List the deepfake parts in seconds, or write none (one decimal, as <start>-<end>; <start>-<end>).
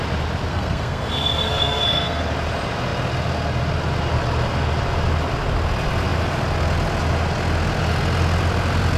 0.5-2.2